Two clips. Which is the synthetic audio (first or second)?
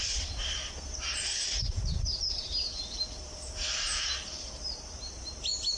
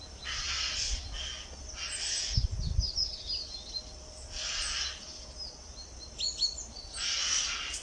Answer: first